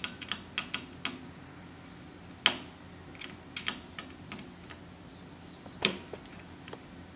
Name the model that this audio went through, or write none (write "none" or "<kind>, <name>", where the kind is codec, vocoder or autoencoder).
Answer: none